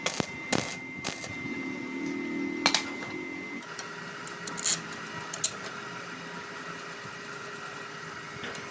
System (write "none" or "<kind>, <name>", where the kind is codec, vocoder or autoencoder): none